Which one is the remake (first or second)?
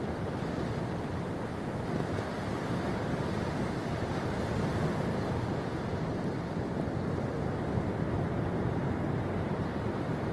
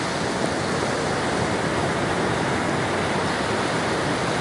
first